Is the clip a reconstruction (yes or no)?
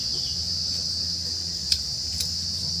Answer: no